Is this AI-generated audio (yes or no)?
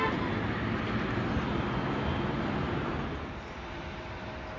no